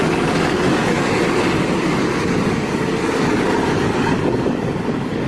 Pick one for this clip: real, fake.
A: fake